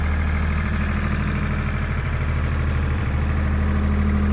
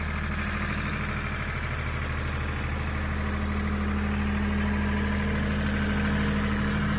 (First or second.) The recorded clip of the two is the second